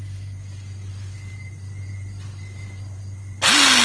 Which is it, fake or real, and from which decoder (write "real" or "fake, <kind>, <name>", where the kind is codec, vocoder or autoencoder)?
real